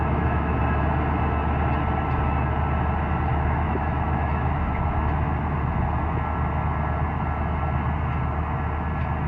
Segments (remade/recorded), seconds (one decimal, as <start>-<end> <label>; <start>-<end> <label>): 0.0-0.6 remade; 0.6-3.3 recorded; 3.3-4.7 remade; 4.7-9.3 recorded